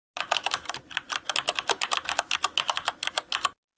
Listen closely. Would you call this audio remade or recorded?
recorded